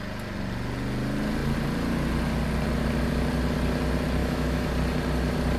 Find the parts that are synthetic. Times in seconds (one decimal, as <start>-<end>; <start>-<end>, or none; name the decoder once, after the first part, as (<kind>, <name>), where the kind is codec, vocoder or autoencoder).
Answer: 4.2-4.7 (autoencoder, DAC-VAE)